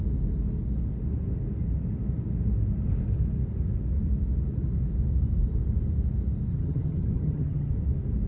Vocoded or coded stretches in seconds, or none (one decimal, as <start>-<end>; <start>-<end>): 6.5-7.7